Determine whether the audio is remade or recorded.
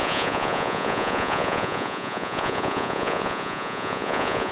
remade